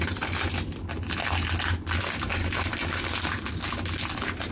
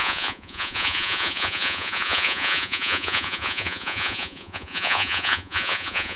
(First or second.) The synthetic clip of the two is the second